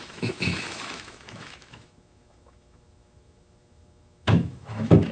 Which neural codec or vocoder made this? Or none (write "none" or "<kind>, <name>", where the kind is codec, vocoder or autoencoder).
autoencoder, DAC-VAE